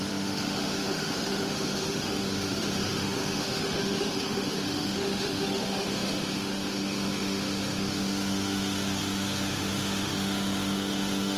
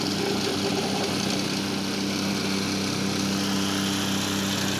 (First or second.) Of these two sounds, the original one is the second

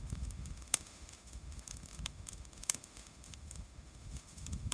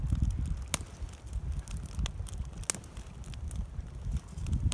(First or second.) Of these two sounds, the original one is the second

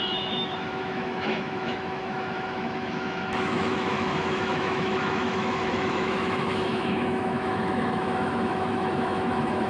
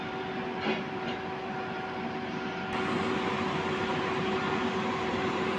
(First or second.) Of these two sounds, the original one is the second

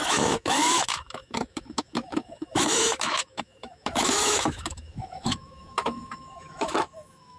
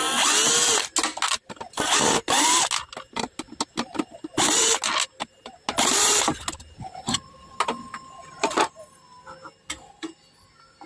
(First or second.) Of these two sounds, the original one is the second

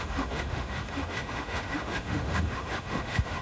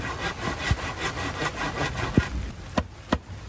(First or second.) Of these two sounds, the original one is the second